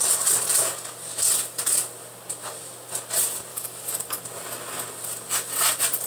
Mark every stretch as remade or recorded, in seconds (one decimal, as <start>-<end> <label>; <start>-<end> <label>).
0.0-3.5 recorded; 3.5-4.2 remade; 4.2-6.1 recorded